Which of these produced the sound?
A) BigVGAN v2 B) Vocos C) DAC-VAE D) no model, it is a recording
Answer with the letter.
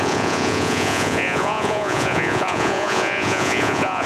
B